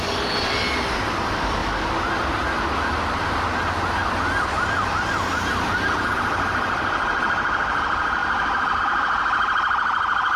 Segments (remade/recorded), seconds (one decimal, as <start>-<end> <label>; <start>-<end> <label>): 0.0-10.4 recorded